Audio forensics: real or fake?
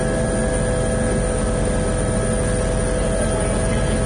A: real